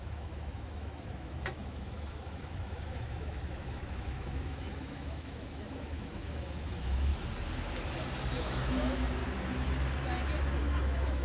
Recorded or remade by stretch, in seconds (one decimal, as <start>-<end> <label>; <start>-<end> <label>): 0.0-7.1 remade; 7.1-8.3 recorded; 8.3-9.2 remade; 9.2-10.6 recorded; 10.6-11.2 remade